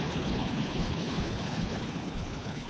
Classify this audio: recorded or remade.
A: remade